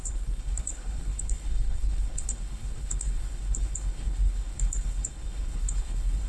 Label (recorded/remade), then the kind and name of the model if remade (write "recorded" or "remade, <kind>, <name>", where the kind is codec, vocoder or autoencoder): remade, codec, HILCodec